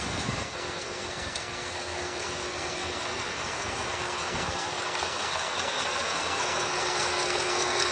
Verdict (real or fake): fake